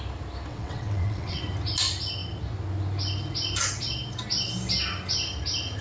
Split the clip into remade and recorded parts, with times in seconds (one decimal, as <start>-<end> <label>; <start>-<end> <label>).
0.0-0.5 recorded; 0.5-1.4 remade; 1.4-5.8 recorded